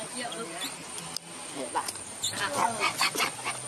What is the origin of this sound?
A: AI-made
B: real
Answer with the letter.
B